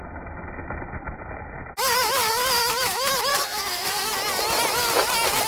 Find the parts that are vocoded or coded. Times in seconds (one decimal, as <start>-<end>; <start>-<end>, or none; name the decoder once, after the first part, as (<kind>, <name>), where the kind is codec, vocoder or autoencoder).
3.3-4.1 (codec, SNAC)